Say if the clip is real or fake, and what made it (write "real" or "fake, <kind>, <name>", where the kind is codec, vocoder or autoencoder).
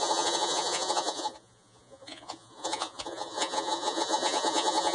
fake, vocoder, Vocos